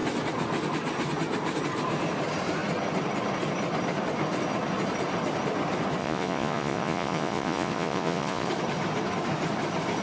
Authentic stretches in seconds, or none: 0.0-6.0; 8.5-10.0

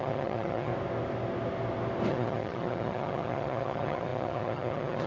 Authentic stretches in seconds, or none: 0.7-2.1

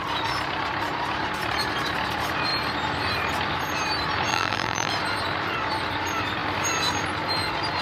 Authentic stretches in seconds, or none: 0.0-4.3; 4.9-7.8

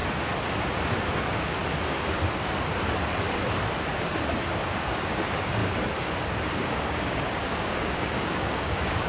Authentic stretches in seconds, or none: 0.0-1.1; 1.6-4.7; 5.6-6.4